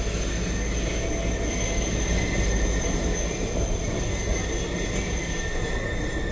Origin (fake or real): real